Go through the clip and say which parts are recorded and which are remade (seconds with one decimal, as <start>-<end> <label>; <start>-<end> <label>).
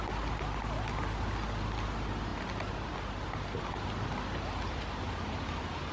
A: 0.0-5.9 recorded